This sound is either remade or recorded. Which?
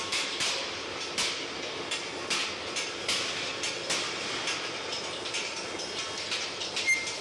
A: recorded